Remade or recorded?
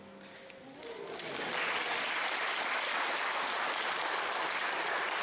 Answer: recorded